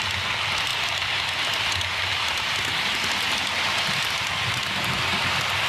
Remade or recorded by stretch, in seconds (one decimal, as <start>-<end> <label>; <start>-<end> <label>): 0.0-5.7 recorded